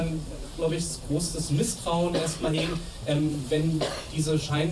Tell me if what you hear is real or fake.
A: fake